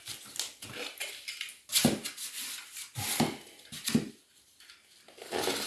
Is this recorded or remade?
recorded